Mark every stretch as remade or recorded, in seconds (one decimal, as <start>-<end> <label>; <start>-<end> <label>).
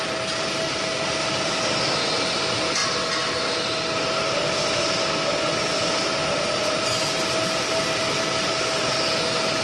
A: 0.0-9.6 recorded